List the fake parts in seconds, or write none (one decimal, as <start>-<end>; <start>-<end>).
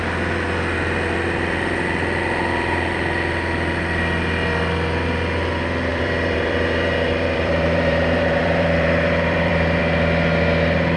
5.9-9.8